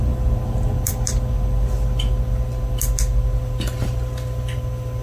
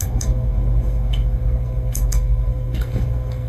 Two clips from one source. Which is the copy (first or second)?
second